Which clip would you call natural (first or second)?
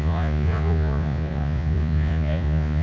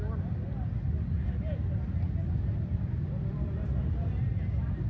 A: second